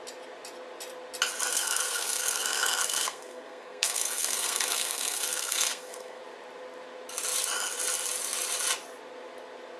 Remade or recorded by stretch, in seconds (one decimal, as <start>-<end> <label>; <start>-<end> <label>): 0.0-1.5 recorded; 1.5-6.2 remade; 6.2-9.8 recorded